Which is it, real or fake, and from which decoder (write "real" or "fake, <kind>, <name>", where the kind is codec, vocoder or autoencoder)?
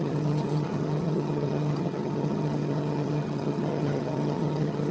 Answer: fake, vocoder, HiFi-GAN